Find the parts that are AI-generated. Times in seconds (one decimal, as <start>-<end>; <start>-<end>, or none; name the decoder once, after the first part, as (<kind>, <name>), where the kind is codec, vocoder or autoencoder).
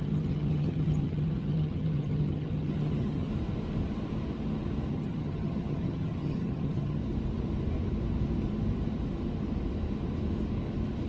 0.0-3.3 (vocoder, HiFi-GAN); 4.9-7.0